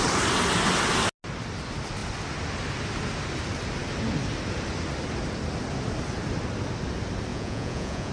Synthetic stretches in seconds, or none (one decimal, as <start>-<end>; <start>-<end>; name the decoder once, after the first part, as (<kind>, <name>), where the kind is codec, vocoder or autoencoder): 7.3-8.1 (vocoder, Vocos)